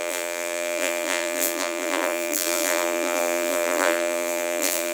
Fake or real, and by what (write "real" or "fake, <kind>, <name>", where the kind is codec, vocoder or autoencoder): fake, vocoder, BigVGAN v2